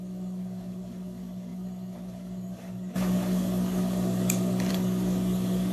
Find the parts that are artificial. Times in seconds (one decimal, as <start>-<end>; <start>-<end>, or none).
0.0-5.7